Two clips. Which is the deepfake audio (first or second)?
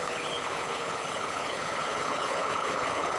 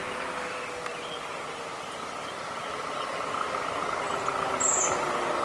first